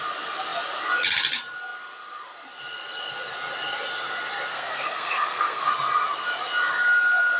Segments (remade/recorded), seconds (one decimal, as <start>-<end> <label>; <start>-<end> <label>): 0.0-4.5 recorded; 4.5-5.7 remade; 5.7-7.4 recorded